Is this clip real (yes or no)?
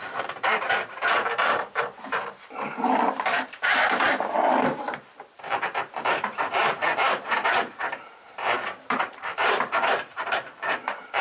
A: no